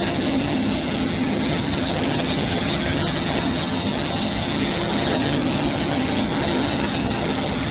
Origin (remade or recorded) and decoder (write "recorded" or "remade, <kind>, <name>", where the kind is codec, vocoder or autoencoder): remade, vocoder, HiFi-GAN